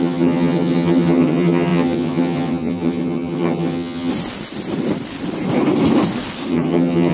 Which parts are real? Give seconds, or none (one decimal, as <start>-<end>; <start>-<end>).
4.1-6.5